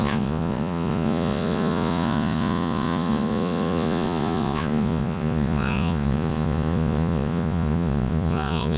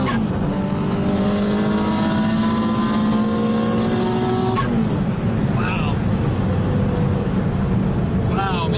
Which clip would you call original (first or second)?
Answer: second